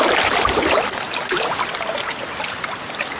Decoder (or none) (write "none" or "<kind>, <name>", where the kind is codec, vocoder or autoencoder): none